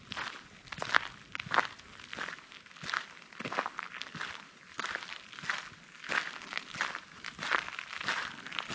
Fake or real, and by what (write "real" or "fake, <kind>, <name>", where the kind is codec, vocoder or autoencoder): real